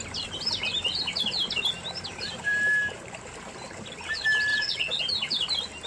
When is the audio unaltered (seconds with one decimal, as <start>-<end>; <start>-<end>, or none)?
0.0-4.5; 5.0-5.9